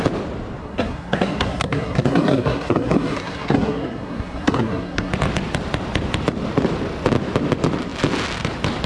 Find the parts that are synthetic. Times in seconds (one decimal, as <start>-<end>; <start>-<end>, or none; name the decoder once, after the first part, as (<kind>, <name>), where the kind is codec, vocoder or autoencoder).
0.6-5.1 (codec, SNAC)